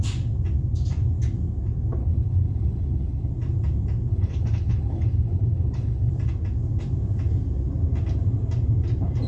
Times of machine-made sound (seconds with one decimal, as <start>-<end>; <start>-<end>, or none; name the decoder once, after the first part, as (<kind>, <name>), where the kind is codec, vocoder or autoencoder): 2.0-3.3 (codec, HILCodec); 4.1-6.1